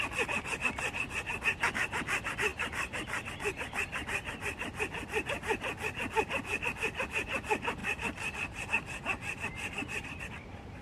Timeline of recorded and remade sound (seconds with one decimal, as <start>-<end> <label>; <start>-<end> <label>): 0.0-7.8 recorded; 7.8-10.2 remade; 10.2-10.8 recorded